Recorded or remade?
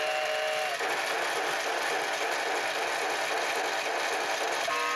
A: recorded